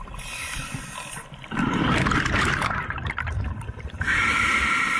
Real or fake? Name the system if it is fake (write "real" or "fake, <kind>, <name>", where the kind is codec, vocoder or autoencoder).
fake, vocoder, BigVGAN v2